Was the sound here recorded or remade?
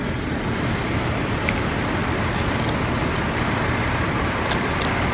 recorded